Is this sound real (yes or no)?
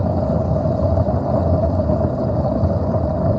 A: no